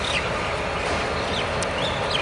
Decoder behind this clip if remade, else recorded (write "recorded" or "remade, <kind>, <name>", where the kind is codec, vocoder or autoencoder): recorded